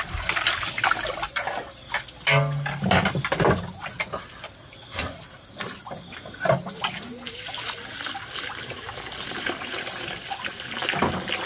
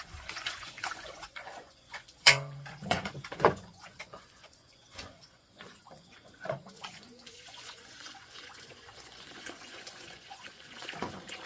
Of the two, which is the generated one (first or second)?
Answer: second